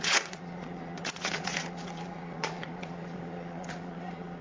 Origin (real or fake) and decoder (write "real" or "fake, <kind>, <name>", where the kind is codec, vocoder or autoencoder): fake, vocoder, Vocos